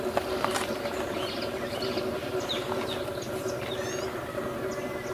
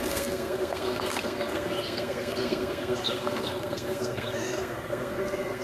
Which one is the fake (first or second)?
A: second